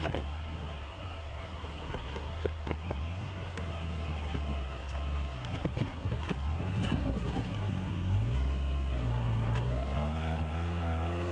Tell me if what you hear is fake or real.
fake